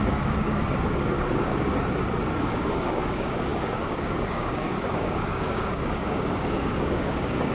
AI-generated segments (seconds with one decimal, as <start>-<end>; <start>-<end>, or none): 0.0-1.5; 2.4-7.5